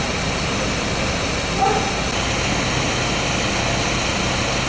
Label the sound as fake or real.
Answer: real